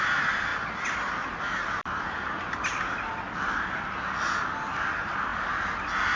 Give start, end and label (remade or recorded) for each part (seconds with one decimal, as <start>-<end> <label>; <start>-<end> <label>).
0.0-6.2 recorded